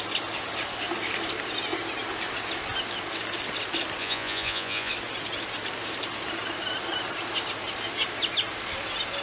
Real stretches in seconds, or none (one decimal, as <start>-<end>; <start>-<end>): 0.0-4.0; 4.9-9.2